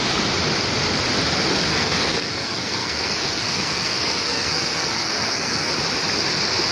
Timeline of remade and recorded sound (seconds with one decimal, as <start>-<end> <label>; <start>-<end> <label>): 0.0-1.7 recorded; 1.7-5.7 remade; 5.7-6.7 recorded